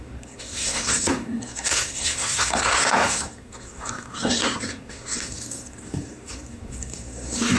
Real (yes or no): no